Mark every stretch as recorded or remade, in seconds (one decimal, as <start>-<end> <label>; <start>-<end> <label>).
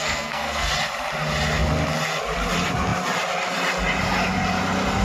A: 0.0-0.7 remade; 0.7-5.0 recorded